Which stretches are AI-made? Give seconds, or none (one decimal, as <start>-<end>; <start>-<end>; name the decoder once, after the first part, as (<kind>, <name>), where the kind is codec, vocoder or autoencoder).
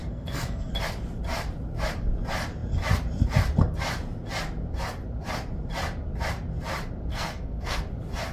0.0-0.7 (codec, SNAC); 7.1-7.8